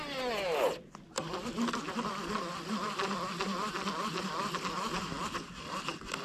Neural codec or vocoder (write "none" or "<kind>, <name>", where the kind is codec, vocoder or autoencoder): none